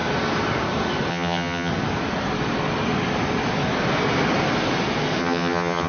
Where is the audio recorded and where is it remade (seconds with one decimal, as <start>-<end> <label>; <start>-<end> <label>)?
0.0-1.1 recorded; 1.1-1.7 remade; 1.7-5.2 recorded; 5.2-5.9 remade

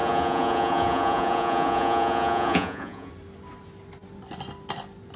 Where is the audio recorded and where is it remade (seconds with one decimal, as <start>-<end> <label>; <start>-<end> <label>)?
0.0-3.1 remade; 3.1-5.2 recorded